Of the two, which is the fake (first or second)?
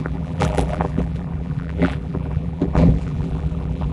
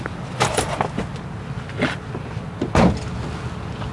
first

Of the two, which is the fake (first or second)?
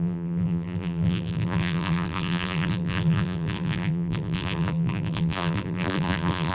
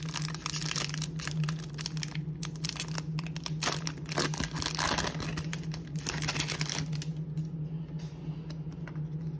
first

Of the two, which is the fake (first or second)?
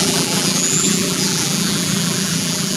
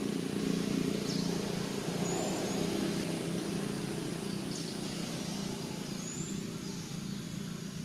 first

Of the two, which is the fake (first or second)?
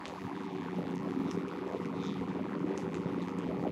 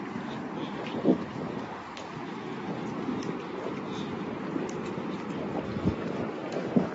first